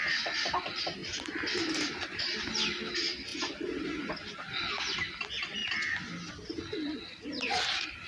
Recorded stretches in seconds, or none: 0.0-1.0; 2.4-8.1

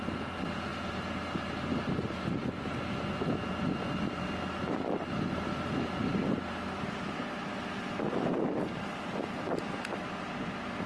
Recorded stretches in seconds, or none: 0.0-10.9

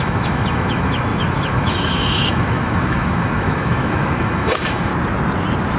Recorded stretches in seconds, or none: 4.9-5.8

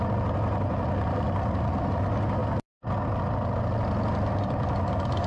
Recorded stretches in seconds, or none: 0.0-5.3